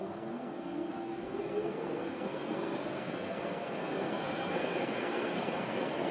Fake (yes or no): yes